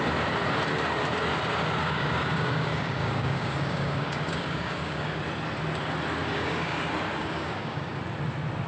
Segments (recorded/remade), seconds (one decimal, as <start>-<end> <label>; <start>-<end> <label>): 0.0-1.8 recorded; 1.8-5.2 remade; 5.2-6.2 recorded; 6.2-6.8 remade; 6.8-7.2 recorded; 7.2-8.0 remade; 8.0-8.7 recorded

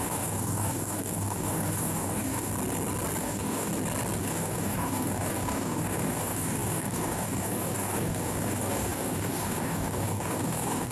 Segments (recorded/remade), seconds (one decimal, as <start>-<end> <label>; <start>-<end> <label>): 0.0-2.5 remade; 2.5-3.2 recorded; 3.2-3.7 remade; 3.7-4.2 recorded; 4.2-10.9 remade